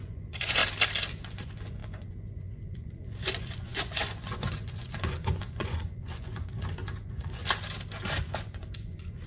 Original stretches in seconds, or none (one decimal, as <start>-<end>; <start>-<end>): 0.6-1.1; 7.4-8.2